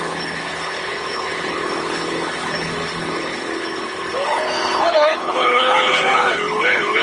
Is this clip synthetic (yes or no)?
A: yes